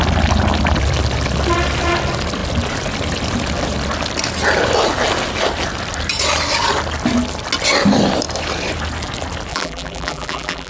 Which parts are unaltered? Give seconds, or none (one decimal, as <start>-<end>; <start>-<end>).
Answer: 0.0-9.5